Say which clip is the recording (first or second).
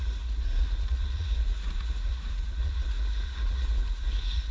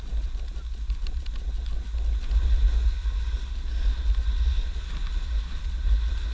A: second